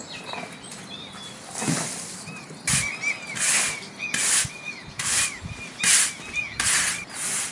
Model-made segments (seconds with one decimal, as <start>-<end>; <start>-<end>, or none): none